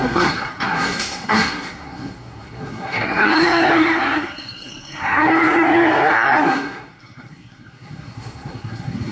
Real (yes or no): no